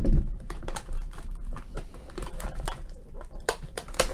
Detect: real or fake fake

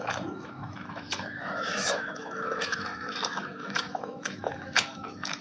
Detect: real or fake fake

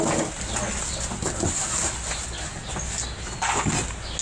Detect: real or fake real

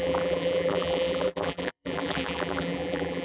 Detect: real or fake fake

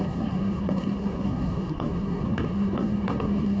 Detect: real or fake fake